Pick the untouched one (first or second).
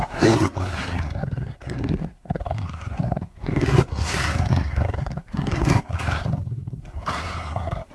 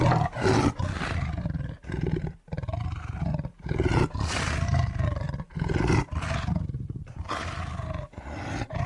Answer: second